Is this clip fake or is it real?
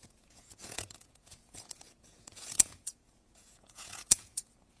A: fake